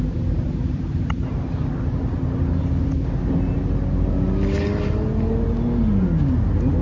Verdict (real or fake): real